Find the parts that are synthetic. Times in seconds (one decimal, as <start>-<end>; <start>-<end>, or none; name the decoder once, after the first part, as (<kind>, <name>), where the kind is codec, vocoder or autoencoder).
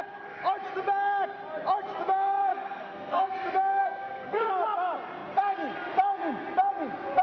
2.5-3.3 (codec, SNAC); 3.8-4.5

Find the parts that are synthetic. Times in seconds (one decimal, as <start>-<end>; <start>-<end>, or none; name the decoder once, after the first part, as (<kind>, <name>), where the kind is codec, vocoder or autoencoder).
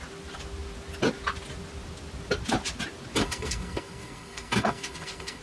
3.2-5.4 (codec, SNAC)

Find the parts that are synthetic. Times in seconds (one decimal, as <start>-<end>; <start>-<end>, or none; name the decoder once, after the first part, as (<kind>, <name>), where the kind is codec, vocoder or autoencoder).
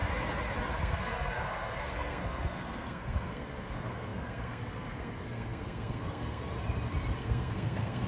0.8-6.5 (codec, SNAC); 7.2-8.1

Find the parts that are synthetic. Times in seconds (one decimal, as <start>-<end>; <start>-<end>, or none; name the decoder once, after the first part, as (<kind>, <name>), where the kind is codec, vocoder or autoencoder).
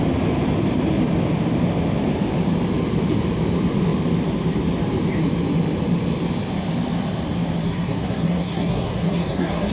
7.6-9.7 (codec, SNAC)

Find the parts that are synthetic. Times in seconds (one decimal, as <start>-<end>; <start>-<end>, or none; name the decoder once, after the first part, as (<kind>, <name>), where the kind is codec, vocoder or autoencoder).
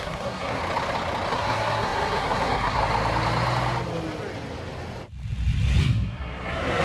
0.0-0.6 (codec, SNAC); 1.3-2.8; 5.8-6.8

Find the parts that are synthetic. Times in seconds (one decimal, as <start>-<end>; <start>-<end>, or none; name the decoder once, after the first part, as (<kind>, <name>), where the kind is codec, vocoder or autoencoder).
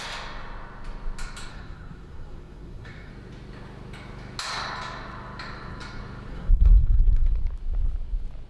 1.5-3.1 (codec, SNAC); 6.3-7.3